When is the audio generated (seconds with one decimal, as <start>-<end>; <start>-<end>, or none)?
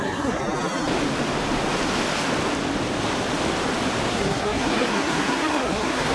0.0-0.4; 4.1-6.1